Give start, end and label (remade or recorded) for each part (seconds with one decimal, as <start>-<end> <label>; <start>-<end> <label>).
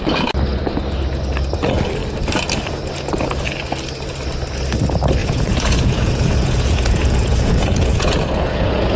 0.0-5.2 recorded; 5.2-9.0 remade